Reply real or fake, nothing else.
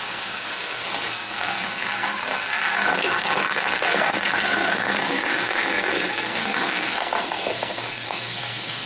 fake